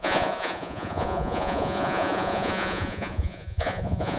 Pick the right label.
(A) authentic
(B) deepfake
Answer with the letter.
B